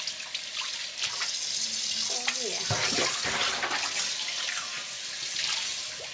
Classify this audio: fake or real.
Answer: real